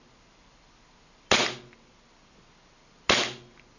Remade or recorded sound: recorded